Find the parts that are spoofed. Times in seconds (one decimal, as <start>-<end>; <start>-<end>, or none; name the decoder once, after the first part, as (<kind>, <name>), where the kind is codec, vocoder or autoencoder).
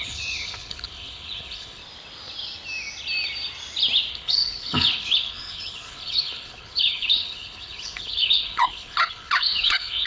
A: 0.0-1.8 (codec, HILCodec); 4.1-10.1